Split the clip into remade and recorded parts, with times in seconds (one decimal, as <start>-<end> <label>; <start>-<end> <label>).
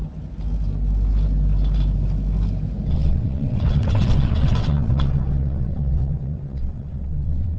0.0-2.9 recorded; 2.9-7.6 remade